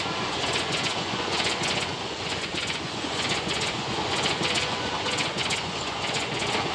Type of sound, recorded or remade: remade